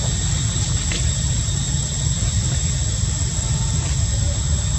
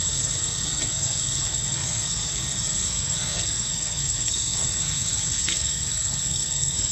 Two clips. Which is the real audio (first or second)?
first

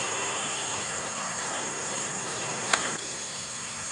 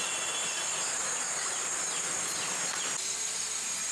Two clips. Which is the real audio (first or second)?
second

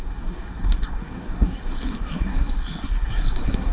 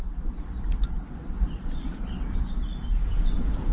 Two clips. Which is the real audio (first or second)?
second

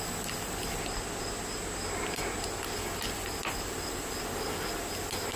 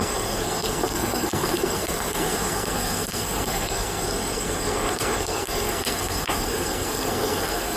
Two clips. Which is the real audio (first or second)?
first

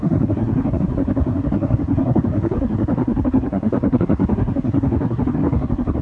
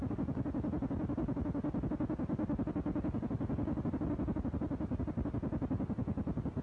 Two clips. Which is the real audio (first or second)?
second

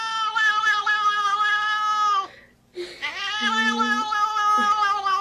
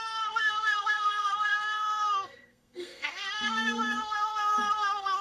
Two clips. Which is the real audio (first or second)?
first